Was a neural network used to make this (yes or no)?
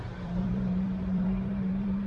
yes